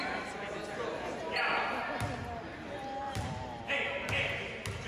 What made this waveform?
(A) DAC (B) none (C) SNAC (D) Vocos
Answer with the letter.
B